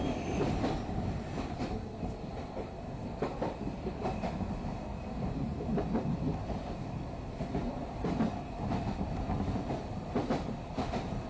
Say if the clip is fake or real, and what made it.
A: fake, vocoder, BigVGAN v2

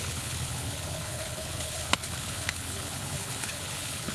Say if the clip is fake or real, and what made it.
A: fake, codec, HILCodec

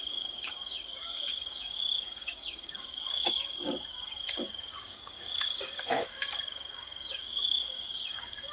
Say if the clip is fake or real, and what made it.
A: fake, codec, DAC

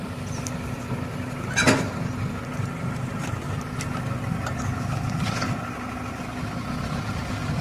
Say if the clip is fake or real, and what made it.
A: real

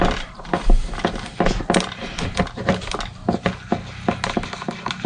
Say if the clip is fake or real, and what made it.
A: real